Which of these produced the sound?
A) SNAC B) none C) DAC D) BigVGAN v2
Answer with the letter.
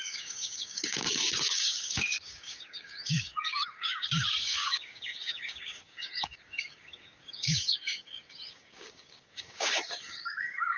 C